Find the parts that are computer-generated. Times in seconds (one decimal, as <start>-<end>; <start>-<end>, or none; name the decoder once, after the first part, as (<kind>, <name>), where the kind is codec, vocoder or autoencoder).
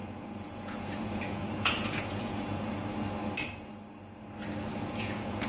0.0-2.8 (vocoder, Vocos); 4.7-5.5